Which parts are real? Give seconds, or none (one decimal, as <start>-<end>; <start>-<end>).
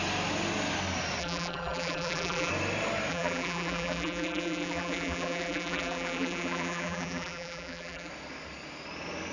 0.0-1.2; 2.5-3.1; 8.1-9.3